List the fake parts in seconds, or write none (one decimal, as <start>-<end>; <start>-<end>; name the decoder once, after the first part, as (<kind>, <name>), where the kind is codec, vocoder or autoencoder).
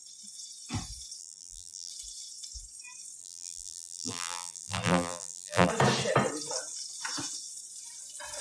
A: 1.2-1.9 (vocoder, BigVGAN v2); 3.2-5.7